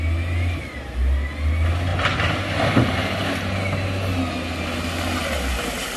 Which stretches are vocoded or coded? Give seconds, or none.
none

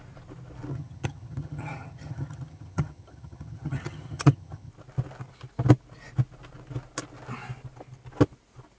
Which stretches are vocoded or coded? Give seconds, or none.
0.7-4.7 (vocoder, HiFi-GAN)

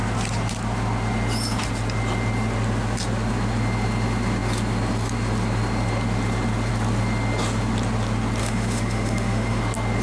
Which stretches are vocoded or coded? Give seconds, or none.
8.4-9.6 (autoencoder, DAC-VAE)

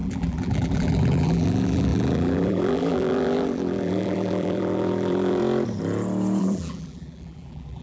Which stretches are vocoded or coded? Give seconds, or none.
0.0-5.4 (vocoder, BigVGAN v2); 6.4-7.8

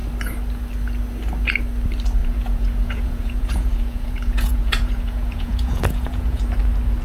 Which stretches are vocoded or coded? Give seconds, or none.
2.2-6.4 (vocoder, Vocos)